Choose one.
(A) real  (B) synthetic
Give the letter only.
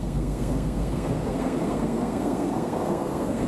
B